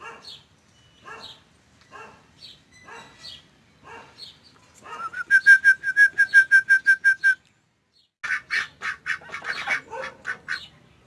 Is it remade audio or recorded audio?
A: recorded